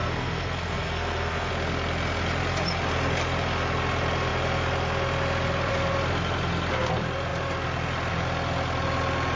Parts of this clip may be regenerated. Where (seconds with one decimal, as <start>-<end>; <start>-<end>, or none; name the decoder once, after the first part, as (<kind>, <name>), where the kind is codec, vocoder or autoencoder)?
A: 0.0-1.5 (codec, SNAC)